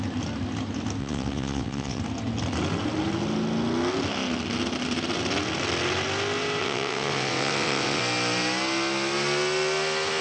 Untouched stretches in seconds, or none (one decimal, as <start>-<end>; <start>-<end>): 0.0-1.0; 2.0-6.6; 8.0-10.2